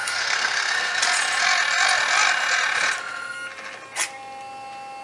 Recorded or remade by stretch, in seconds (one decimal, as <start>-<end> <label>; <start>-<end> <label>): 0.0-1.0 remade; 1.0-5.0 recorded

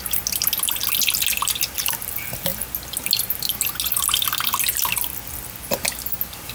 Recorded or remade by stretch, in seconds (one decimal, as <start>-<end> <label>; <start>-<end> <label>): 0.0-6.5 recorded

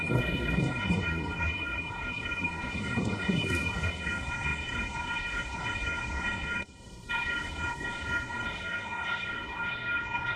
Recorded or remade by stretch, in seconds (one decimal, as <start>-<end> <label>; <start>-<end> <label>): 0.0-10.4 remade

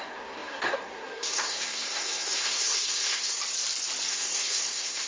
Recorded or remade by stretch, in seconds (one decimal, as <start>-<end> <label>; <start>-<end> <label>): 0.0-3.4 remade; 3.4-4.1 recorded; 4.1-5.1 remade

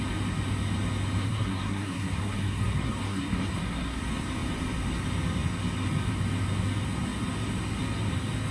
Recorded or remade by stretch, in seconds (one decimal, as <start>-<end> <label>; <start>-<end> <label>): 0.0-1.2 recorded; 1.2-4.0 remade; 4.0-8.5 recorded